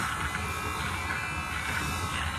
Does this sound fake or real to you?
real